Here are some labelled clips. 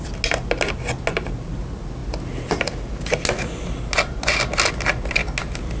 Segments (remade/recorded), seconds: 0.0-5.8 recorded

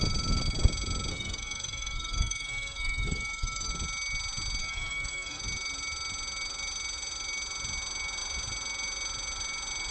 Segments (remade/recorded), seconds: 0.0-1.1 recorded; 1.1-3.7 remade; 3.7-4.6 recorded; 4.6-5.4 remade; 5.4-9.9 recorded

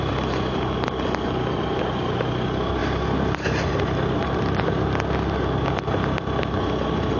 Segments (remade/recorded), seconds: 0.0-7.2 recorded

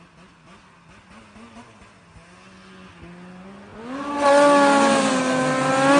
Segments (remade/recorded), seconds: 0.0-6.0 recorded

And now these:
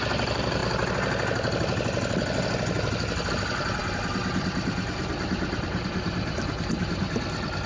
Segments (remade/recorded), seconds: 0.0-7.7 recorded

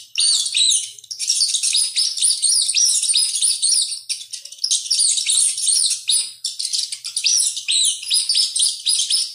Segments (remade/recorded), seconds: 0.0-9.3 recorded

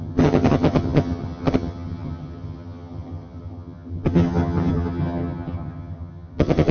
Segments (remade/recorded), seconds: 0.0-6.7 remade